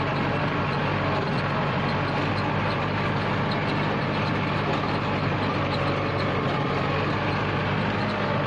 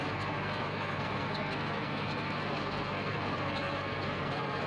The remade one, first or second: second